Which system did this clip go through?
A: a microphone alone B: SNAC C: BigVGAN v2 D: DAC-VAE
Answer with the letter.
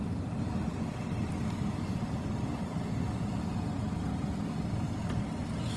A